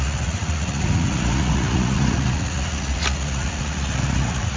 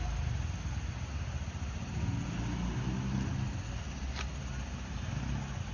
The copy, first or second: first